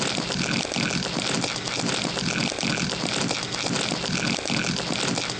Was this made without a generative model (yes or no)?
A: yes